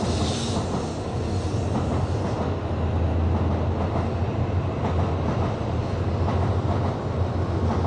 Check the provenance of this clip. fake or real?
real